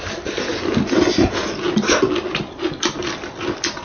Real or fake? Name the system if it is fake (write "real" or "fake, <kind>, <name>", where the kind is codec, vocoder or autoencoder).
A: real